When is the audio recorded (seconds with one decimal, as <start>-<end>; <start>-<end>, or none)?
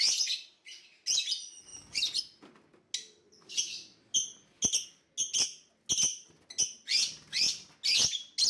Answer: 0.0-8.5